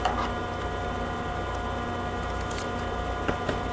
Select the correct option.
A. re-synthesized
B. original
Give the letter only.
B